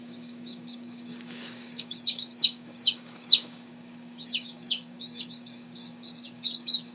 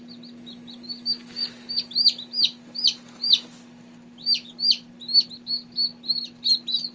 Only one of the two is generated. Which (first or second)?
first